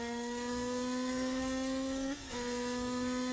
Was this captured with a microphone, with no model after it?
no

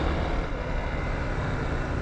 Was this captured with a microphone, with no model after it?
yes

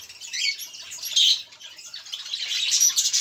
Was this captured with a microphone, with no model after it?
yes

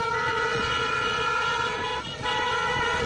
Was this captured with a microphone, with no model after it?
no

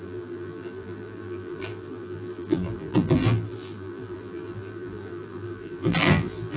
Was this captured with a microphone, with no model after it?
no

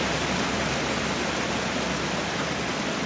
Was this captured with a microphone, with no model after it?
yes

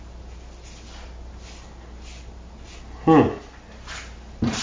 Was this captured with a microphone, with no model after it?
yes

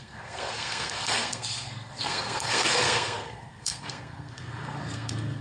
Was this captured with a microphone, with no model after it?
no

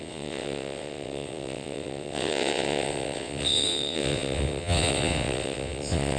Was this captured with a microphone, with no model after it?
no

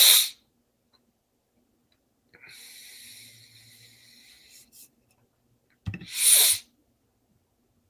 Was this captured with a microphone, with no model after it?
yes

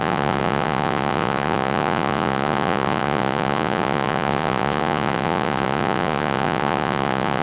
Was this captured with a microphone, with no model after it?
no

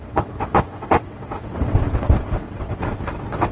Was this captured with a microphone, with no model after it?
no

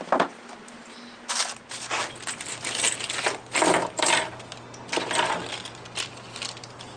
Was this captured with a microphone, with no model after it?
yes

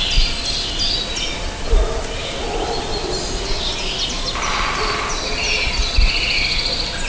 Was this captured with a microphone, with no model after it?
yes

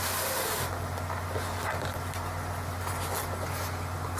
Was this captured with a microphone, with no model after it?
yes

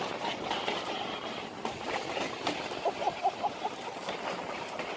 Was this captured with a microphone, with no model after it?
yes